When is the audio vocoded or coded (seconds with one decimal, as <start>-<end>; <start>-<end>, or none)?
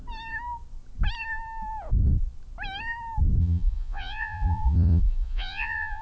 3.4-6.0